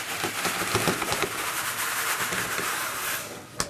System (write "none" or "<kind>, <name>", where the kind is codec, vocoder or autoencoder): none